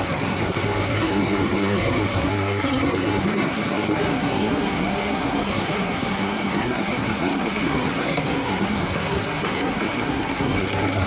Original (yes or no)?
no